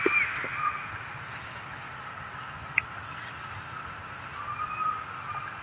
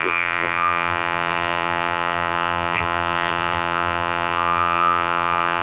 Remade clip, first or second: second